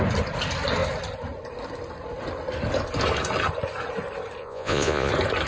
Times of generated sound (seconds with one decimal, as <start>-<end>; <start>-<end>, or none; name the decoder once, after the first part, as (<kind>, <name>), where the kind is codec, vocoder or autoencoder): 4.4-5.1 (vocoder, Vocos)